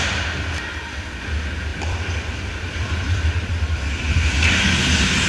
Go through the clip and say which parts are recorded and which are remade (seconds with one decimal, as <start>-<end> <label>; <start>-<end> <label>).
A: 0.0-1.7 recorded; 1.7-4.5 remade; 4.5-5.3 recorded